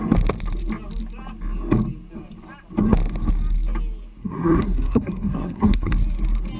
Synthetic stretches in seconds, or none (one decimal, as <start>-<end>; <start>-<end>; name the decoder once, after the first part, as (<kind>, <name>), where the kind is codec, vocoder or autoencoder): 4.2-5.9 (codec, SNAC)